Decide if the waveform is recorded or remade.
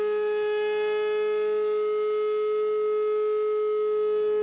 recorded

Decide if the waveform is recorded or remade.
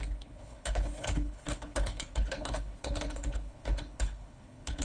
remade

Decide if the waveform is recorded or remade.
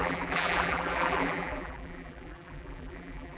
remade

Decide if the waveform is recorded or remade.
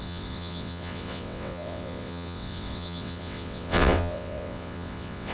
remade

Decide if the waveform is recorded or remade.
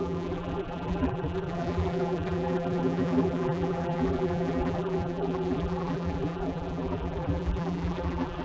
remade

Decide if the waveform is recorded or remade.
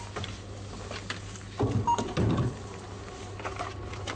recorded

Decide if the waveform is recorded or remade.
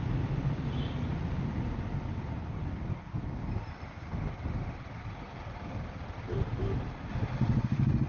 recorded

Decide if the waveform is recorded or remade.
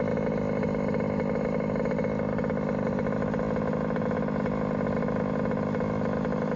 recorded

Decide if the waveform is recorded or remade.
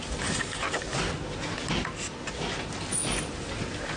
recorded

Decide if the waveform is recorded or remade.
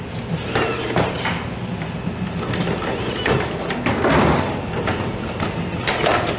recorded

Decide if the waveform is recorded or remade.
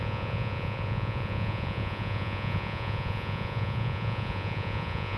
remade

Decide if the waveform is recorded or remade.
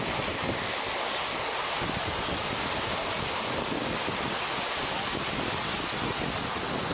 recorded